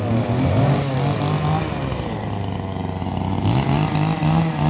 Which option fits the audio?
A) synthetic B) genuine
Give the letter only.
B